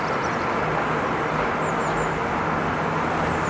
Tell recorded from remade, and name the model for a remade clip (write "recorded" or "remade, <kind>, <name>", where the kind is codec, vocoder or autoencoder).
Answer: recorded